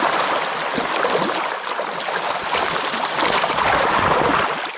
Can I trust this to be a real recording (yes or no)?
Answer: yes